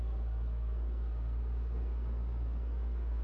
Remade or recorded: remade